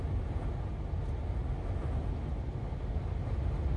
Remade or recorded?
recorded